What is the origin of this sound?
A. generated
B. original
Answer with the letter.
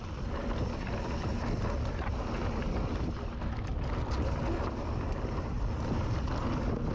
B